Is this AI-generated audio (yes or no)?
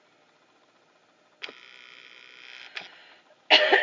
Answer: no